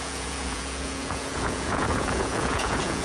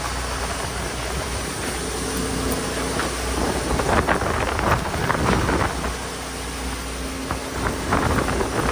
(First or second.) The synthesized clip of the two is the first